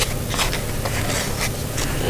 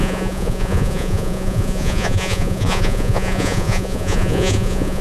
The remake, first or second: second